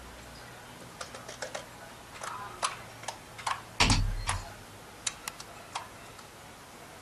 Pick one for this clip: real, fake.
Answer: real